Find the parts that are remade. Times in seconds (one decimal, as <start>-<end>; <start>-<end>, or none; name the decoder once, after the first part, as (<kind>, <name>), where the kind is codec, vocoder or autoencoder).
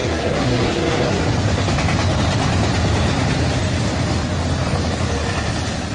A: 0.0-1.2 (codec, SNAC)